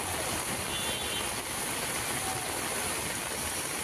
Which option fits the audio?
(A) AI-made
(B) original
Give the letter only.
B